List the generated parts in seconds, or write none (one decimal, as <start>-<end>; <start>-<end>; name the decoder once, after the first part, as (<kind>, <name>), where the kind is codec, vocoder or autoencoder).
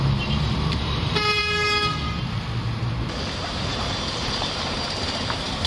0.0-1.4 (vocoder, BigVGAN v2); 3.3-5.7